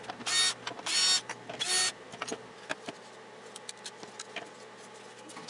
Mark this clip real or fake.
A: real